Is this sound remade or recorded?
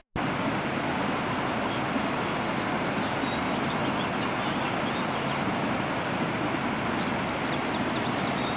recorded